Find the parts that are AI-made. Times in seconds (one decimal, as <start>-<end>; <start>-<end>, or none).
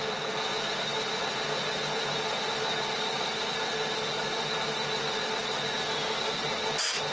none